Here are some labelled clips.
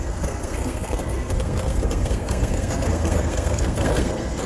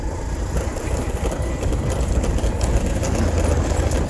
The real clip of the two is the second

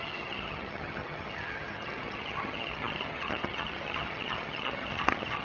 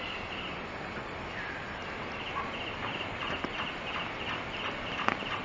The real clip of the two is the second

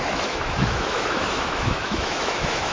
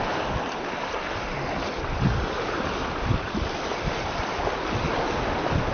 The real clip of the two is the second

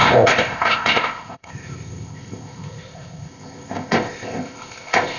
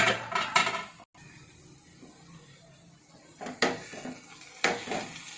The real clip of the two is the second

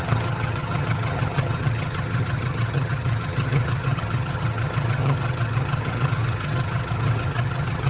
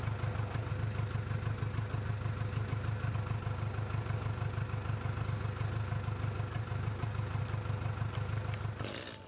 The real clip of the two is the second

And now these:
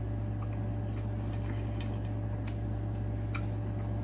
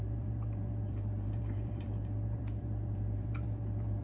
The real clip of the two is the first